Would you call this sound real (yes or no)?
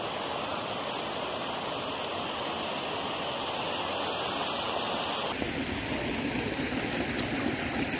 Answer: yes